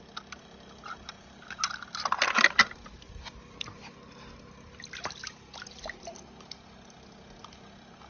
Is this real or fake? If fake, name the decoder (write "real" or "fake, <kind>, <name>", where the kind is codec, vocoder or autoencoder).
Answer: real